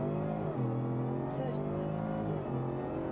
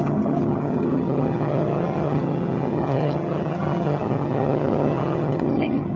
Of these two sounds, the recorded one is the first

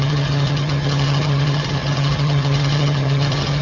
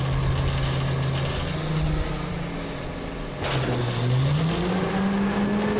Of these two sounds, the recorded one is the second